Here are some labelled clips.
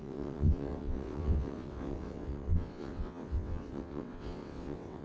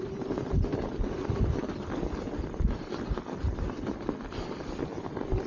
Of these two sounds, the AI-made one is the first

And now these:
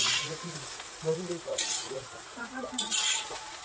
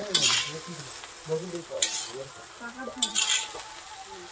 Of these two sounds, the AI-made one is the first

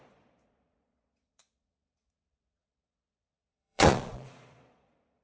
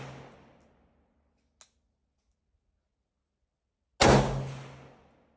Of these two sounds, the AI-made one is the first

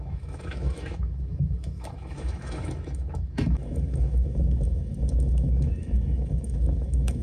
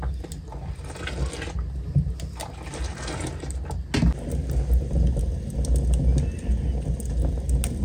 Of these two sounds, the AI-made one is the first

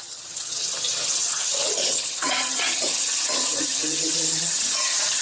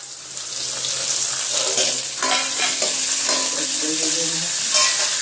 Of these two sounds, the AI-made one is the first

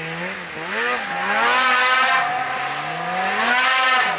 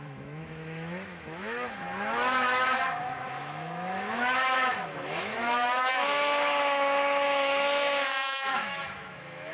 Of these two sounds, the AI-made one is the second